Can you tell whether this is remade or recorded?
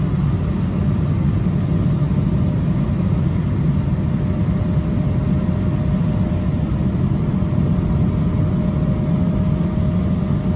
recorded